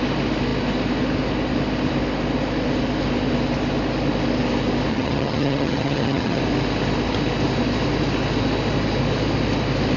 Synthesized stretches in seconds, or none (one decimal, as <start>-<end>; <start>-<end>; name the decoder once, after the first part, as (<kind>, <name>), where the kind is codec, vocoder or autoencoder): 4.9-6.4 (vocoder, HiFi-GAN)

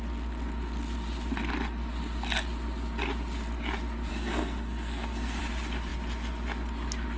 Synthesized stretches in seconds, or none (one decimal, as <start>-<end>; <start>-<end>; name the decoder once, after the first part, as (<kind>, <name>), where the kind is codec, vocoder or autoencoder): 4.1-5.4 (codec, SNAC)